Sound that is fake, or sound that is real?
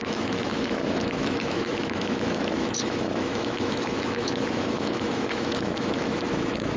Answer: fake